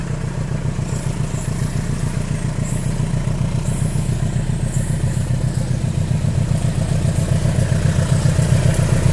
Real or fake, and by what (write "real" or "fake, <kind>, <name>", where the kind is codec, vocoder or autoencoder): real